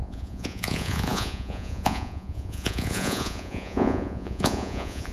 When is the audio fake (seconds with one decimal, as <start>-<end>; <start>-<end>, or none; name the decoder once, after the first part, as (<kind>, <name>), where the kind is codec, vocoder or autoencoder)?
0.0-5.1 (vocoder, Vocos)